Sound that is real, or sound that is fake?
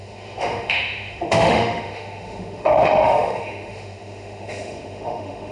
fake